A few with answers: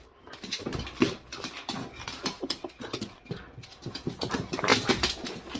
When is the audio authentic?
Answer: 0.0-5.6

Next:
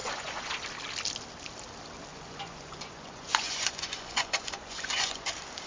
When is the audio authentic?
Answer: 0.5-2.1; 5.3-5.7

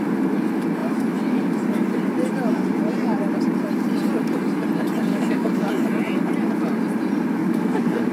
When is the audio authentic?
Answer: 0.0-5.1; 5.7-7.4

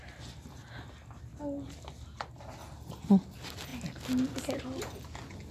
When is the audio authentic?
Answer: 0.0-5.5

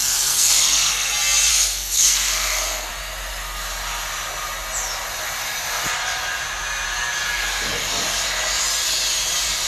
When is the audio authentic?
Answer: 1.1-1.5; 2.9-9.7

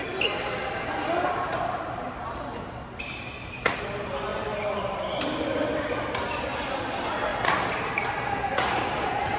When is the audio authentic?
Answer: 0.0-9.4

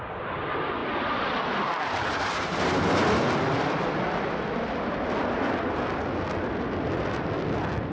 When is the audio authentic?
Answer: 0.0-0.8; 4.3-7.9